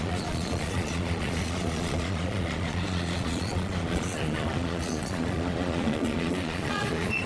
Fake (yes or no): yes